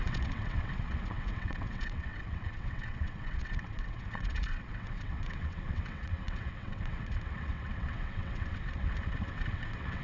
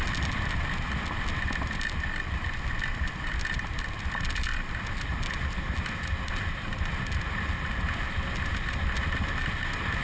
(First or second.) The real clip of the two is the second